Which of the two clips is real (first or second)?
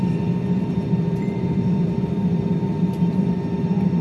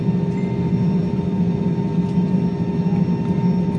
second